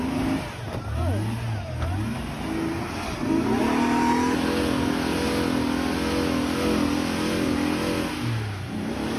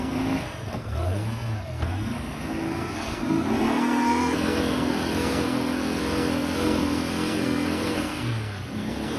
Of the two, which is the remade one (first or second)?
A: second